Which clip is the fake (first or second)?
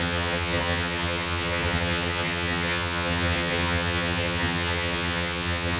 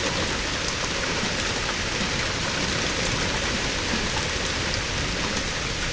first